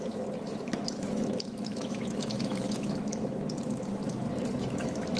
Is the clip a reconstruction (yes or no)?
yes